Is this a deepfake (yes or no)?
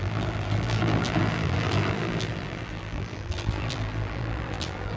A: yes